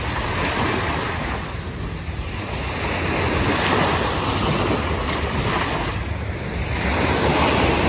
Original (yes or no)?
yes